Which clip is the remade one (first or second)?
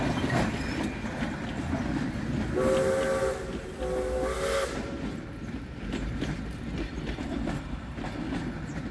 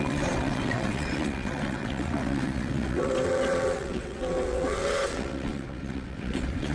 second